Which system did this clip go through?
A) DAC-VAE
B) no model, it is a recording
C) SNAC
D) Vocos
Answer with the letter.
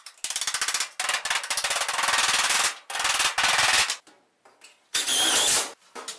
B